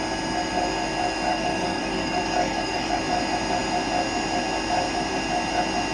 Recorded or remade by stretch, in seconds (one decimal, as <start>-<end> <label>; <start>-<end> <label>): 0.0-1.3 recorded; 1.3-3.0 remade; 3.0-5.9 recorded